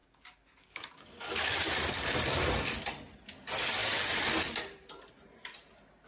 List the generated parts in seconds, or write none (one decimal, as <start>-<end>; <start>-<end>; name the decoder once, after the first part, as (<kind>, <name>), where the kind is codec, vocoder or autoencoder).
0.0-1.5 (codec, DAC)

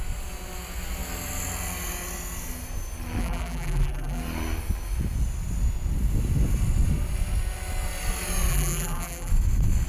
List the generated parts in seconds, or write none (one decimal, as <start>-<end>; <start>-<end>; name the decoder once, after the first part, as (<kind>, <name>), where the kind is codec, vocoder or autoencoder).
3.2-4.2 (vocoder, BigVGAN v2); 8.5-9.3